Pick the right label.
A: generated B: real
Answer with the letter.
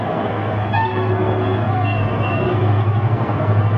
A